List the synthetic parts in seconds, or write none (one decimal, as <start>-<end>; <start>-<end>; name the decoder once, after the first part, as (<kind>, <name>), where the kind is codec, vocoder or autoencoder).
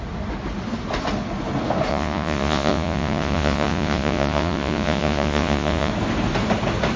1.9-5.9 (vocoder, Vocos)